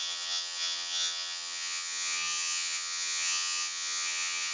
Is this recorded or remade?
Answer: remade